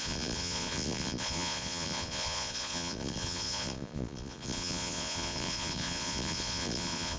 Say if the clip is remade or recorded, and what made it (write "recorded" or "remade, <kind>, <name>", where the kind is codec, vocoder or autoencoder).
remade, vocoder, Vocos